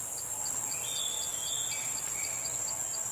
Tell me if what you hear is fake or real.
real